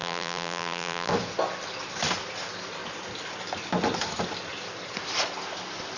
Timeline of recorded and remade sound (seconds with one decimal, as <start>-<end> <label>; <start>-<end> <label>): 0.0-1.1 remade; 1.1-6.0 recorded